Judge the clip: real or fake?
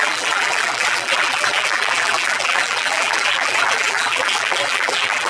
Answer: fake